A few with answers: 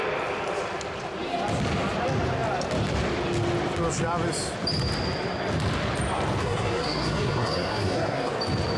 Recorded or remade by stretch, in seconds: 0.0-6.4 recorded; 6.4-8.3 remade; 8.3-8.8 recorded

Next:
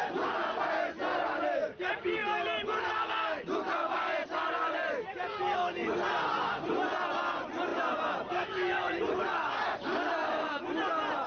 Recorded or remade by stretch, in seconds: 0.0-7.7 recorded; 7.7-9.0 remade; 9.0-11.3 recorded

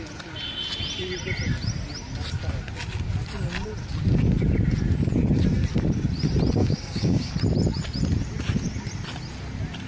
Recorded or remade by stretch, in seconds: 0.0-6.6 recorded; 6.6-7.3 remade; 7.3-9.9 recorded

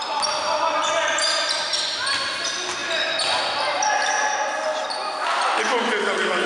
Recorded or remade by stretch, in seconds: 0.0-0.8 recorded; 0.8-1.7 remade; 1.7-6.5 recorded

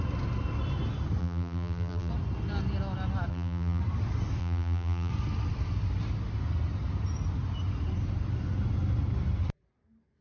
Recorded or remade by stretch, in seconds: 0.0-1.2 recorded; 1.2-2.1 remade; 2.1-3.3 recorded; 3.3-3.8 remade; 3.8-4.4 recorded; 4.4-5.1 remade; 5.1-10.2 recorded

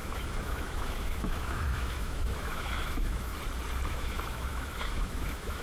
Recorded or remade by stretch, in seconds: 0.0-3.3 remade; 3.3-3.9 recorded; 3.9-5.6 remade

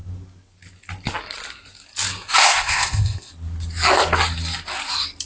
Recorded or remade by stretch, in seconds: 0.0-2.4 recorded; 2.4-3.3 remade; 3.3-5.3 recorded